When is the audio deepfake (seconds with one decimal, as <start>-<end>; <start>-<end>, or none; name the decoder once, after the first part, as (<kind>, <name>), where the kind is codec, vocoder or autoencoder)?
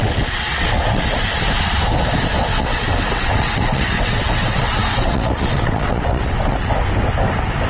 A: 0.0-1.2 (vocoder, WaveNeXt); 2.5-6.7